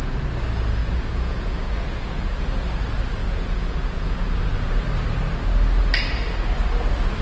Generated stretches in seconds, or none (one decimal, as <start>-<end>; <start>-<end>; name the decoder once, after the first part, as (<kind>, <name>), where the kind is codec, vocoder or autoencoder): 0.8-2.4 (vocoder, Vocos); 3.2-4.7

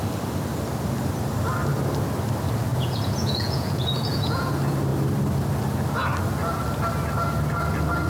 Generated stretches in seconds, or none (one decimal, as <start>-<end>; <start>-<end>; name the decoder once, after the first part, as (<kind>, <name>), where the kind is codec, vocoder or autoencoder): 2.7-4.5 (vocoder, Vocos)

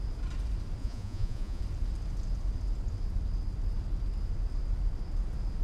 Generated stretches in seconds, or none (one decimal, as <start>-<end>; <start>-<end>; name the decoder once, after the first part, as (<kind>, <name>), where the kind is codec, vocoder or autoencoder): 0.8-1.6 (vocoder, Vocos)